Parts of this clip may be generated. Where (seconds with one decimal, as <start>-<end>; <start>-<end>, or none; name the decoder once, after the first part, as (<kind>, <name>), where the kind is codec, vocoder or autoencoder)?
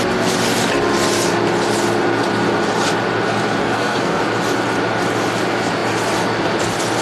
3.6-4.2 (codec, SNAC)